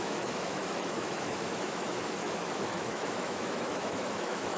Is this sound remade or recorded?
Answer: remade